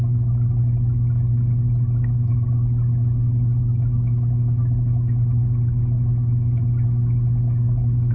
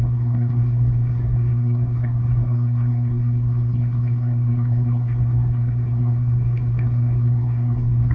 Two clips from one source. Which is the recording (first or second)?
first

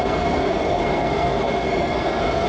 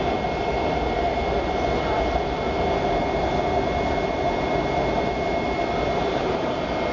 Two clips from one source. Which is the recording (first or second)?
second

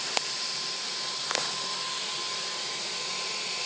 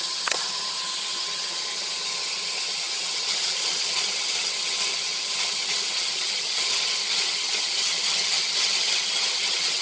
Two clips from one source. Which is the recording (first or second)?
first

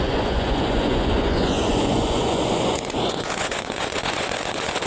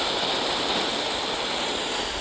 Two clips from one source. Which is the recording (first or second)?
second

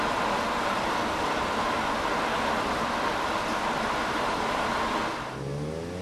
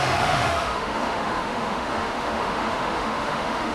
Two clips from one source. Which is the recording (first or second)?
first